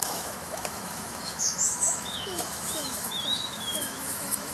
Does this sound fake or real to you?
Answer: fake